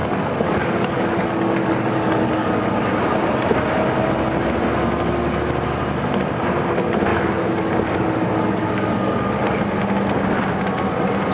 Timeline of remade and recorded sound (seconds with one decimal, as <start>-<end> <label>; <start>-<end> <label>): 0.0-2.9 remade; 2.9-7.1 recorded; 7.1-9.3 remade; 9.3-11.3 recorded